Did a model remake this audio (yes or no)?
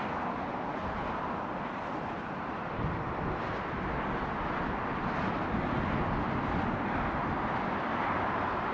no